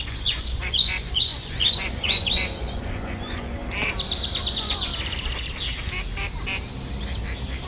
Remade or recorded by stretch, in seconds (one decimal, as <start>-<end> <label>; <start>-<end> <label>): 0.0-3.6 remade; 3.6-4.5 recorded; 4.5-4.9 remade; 4.9-7.7 recorded